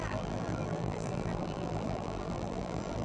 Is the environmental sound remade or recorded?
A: remade